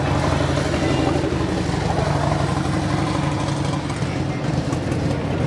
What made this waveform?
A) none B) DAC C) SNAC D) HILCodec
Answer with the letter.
A